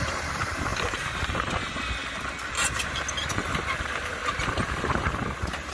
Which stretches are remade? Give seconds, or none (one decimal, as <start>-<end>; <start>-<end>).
0.0-2.0; 3.3-5.7